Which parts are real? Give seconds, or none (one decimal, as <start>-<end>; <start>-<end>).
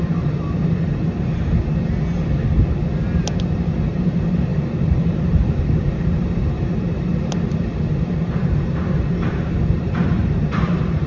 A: 1.5-3.9; 7.1-7.9